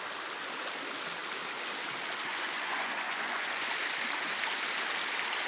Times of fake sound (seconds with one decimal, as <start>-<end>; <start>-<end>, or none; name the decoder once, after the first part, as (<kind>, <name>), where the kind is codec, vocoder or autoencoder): 2.3-3.7 (vocoder, Vocos)